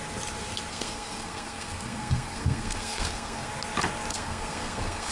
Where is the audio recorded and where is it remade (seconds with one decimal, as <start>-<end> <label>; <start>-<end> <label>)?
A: 0.0-0.7 recorded; 0.7-3.5 remade; 3.5-4.1 recorded; 4.1-5.1 remade